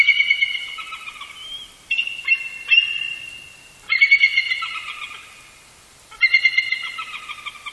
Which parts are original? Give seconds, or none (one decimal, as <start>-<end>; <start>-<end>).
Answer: 0.0-7.7

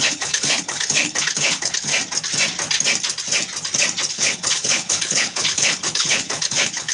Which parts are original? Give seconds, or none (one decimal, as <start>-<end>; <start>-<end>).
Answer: 1.9-4.1

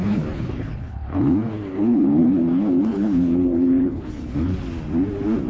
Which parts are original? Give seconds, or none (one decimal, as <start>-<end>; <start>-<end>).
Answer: 4.5-5.5

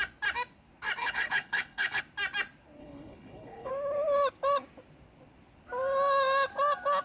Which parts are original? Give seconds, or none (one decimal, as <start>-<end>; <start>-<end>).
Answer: 0.0-1.0; 2.0-2.8; 3.7-7.0

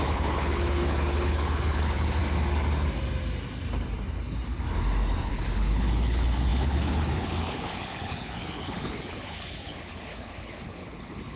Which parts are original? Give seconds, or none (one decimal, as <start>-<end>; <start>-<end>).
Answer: 2.2-5.2

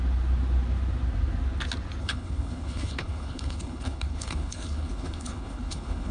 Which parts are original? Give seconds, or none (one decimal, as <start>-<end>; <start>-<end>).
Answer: 0.0-2.0

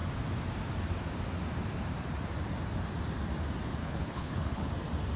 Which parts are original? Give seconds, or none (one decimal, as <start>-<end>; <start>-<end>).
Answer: 0.0-3.8; 4.7-5.2